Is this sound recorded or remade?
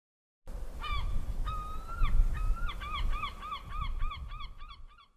recorded